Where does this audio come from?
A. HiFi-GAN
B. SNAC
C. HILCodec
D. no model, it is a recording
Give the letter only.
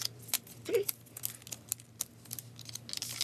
D